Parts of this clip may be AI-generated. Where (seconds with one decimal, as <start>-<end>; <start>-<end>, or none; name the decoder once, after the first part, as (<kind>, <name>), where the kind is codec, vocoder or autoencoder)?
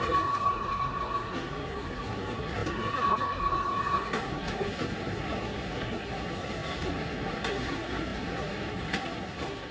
0.0-9.7 (codec, SNAC)